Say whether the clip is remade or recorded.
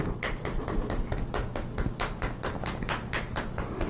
recorded